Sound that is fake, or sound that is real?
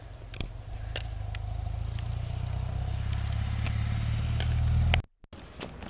real